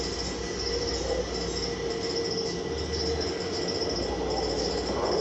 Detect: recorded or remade recorded